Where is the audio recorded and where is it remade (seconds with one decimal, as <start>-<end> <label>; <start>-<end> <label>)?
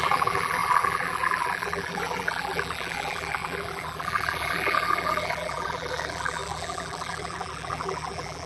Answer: 0.0-8.5 remade